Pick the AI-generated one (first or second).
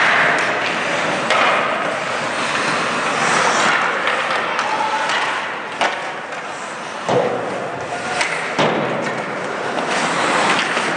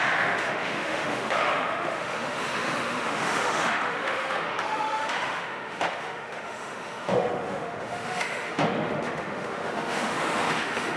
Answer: second